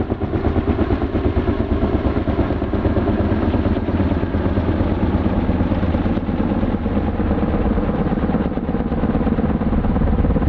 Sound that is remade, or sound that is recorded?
recorded